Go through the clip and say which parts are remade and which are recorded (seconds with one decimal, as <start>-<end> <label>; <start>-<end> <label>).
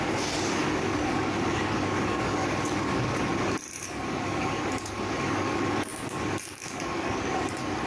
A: 0.0-3.3 remade; 3.3-3.8 recorded; 3.8-7.9 remade